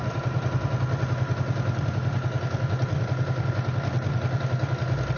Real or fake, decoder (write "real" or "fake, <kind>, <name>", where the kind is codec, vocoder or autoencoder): real